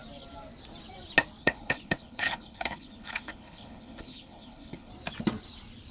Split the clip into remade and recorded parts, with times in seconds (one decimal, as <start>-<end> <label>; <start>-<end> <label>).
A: 0.0-1.4 recorded; 1.4-4.9 remade; 4.9-5.9 recorded